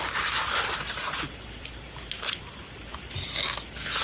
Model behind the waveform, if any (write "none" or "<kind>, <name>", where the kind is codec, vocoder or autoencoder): none